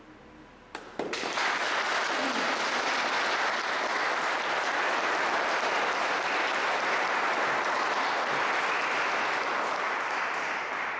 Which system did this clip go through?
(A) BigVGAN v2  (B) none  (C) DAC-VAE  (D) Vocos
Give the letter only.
B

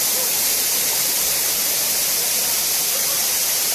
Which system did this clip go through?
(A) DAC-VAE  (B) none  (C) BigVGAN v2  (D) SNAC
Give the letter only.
B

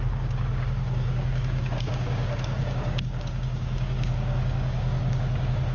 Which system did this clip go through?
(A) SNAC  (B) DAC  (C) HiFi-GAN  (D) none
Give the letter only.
B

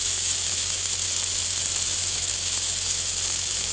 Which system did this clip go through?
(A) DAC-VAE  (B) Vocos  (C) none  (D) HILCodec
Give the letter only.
A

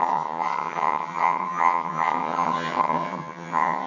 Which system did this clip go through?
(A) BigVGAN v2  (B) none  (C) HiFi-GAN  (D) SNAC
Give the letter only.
C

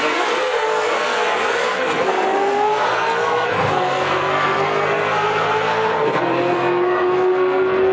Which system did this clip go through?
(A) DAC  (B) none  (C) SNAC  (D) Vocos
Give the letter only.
C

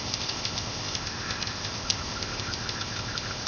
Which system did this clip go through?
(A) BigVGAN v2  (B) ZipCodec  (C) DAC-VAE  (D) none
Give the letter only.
B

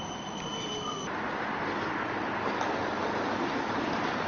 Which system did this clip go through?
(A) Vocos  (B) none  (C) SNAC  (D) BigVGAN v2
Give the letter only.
B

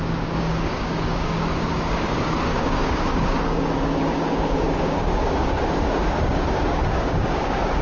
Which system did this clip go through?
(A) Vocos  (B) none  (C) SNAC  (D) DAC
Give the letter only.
D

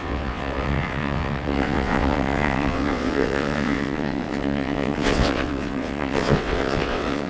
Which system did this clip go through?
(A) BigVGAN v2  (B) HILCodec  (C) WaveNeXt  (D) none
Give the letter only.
C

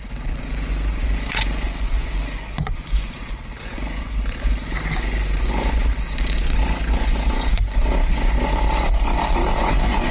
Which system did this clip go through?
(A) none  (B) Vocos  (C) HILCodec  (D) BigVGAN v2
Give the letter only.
B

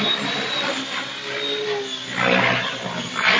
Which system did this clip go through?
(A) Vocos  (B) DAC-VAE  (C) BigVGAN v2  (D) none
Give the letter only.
D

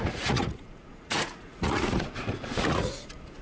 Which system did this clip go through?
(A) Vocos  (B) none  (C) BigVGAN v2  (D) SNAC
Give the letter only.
A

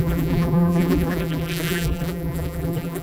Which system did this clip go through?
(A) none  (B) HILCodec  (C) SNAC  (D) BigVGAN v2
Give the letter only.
D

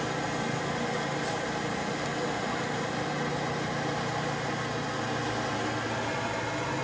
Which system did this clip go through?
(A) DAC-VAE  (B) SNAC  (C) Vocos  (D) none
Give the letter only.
D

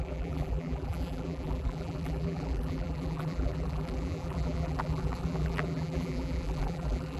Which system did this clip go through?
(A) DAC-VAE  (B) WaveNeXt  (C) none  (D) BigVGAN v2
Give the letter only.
D